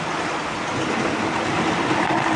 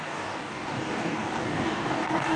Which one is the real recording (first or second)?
first